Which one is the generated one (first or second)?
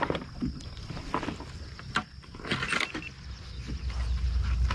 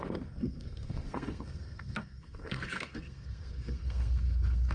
second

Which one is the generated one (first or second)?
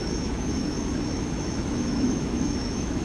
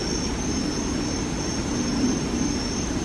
first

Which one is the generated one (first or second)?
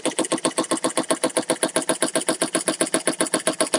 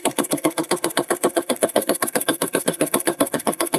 second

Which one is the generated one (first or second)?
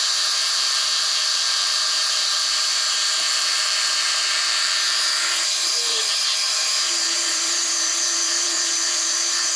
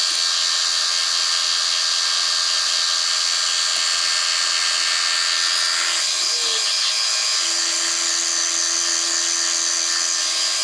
first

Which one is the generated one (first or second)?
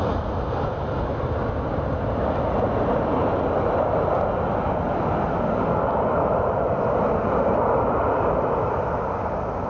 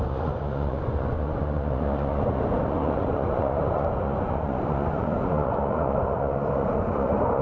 second